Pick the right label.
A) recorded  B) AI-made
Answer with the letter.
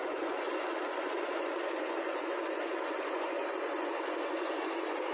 B